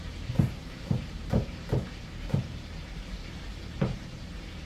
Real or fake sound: fake